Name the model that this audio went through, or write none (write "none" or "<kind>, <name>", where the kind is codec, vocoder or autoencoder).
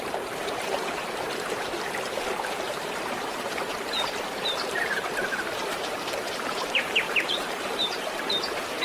vocoder, BigVGAN v2